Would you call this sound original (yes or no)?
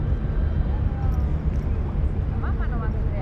yes